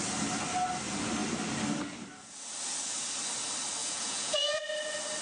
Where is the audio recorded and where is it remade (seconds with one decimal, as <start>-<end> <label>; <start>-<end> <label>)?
0.0-3.8 recorded; 3.8-4.6 remade; 4.6-5.2 recorded